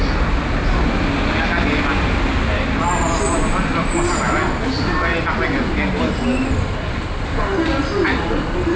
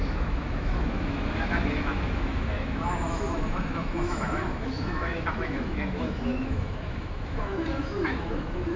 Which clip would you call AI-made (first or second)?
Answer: second